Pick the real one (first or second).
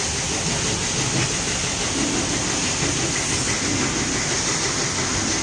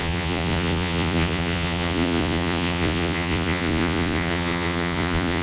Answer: first